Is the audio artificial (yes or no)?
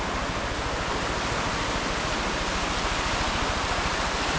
no